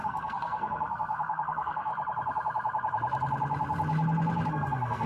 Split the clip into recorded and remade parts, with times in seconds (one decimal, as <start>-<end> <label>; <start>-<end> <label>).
0.0-1.9 remade; 1.9-4.5 recorded; 4.5-5.1 remade